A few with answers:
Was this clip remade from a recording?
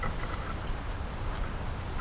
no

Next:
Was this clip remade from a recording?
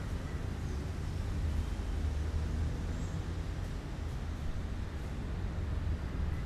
no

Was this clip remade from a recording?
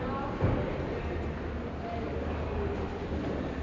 no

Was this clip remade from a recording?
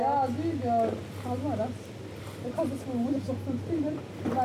no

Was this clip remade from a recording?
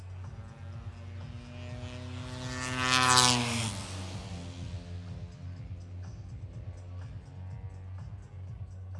no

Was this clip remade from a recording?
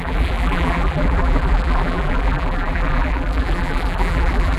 yes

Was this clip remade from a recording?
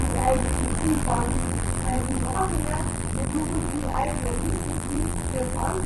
yes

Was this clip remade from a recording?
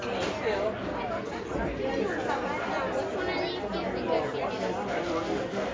no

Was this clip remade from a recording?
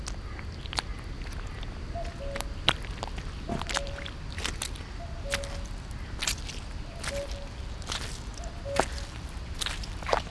no